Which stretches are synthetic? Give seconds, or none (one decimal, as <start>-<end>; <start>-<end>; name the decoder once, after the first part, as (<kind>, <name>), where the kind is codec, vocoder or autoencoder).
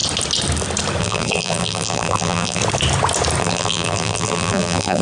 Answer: 1.0-2.6 (vocoder, BigVGAN v2); 3.4-5.0